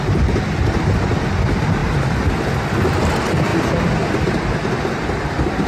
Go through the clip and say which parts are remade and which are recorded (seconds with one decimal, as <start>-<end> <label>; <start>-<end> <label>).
0.0-5.7 recorded